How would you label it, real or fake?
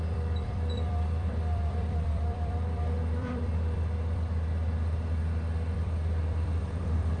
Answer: fake